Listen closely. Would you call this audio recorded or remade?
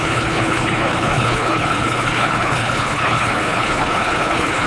remade